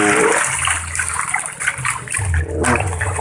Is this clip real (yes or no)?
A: yes